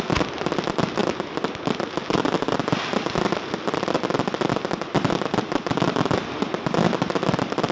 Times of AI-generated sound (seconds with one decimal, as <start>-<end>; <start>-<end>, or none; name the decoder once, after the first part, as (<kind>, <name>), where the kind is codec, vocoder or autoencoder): none